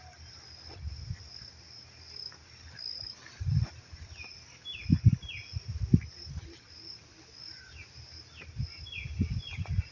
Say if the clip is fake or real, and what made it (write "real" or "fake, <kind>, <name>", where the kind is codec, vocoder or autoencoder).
real